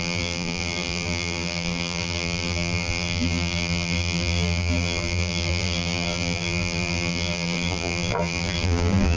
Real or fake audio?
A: fake